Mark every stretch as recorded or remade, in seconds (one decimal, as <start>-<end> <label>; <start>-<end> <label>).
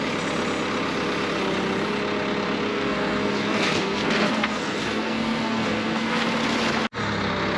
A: 0.0-2.7 recorded; 2.7-6.2 remade; 6.2-7.6 recorded